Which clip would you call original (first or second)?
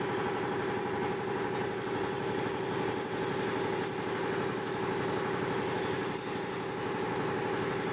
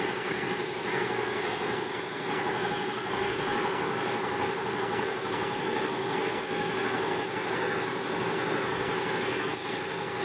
first